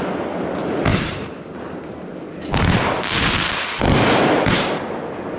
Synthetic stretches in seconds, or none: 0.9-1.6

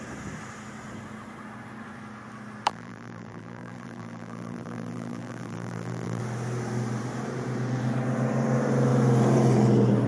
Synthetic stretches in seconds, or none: 2.7-6.2